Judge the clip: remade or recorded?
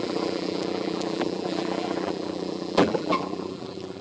remade